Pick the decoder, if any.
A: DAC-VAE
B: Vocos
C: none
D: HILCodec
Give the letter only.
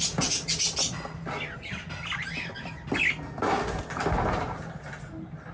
C